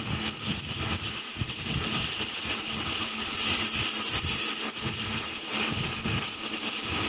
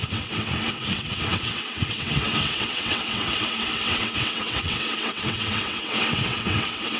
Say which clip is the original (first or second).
first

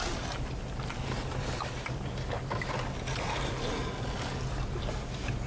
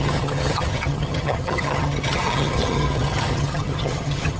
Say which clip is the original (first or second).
first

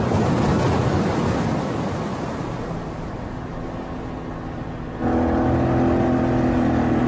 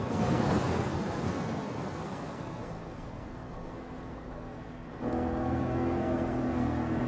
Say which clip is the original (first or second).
first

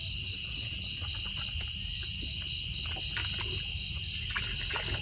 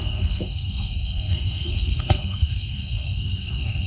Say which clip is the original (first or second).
first